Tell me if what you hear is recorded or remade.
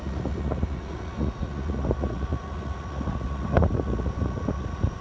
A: remade